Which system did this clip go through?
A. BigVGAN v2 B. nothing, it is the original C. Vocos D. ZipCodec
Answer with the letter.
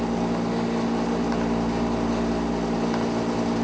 B